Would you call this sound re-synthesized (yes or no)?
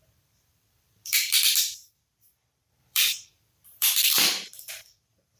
yes